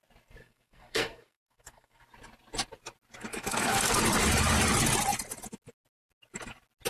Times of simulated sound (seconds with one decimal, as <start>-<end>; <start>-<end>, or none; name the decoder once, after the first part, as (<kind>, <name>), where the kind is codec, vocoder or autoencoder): 0.4-2.0 (codec, SNAC); 3.3-4.0